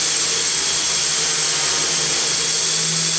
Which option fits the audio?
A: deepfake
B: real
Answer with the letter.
B